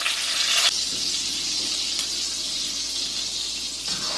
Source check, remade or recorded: recorded